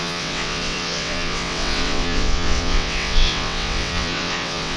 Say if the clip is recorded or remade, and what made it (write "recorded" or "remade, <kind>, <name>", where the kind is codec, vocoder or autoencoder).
remade, vocoder, WaveNeXt